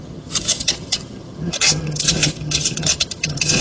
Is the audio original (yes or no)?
no